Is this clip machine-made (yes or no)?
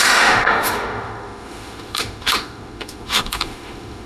yes